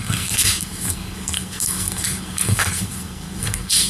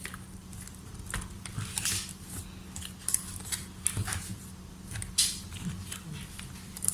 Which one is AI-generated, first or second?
first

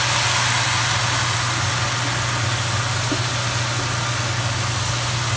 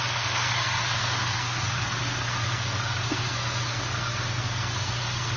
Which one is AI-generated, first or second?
second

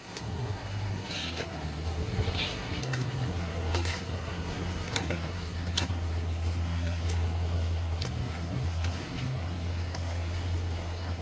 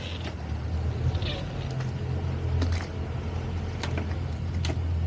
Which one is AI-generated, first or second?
first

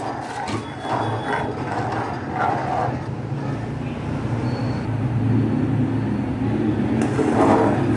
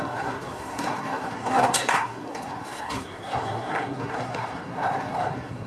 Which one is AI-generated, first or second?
second